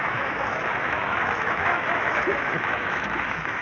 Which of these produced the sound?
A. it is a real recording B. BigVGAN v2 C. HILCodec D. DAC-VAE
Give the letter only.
D